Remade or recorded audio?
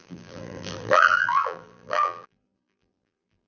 remade